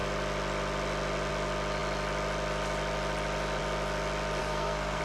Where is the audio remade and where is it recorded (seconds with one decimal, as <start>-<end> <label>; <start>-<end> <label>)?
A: 0.0-4.4 recorded; 4.4-5.0 remade